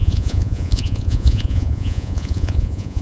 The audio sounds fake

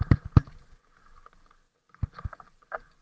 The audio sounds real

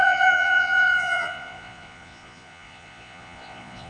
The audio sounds fake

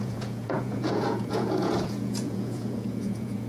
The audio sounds fake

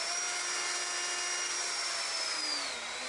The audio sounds real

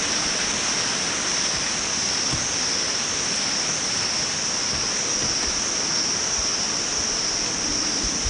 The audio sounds real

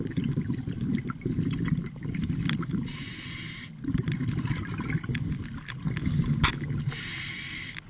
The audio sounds real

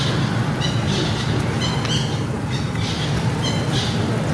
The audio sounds real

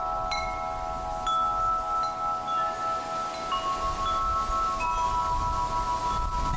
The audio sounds real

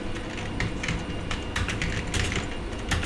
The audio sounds real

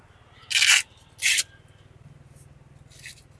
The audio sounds real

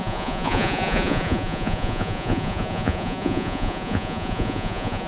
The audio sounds fake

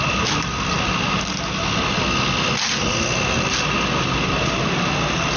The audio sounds real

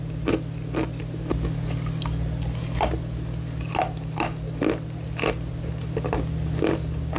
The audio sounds real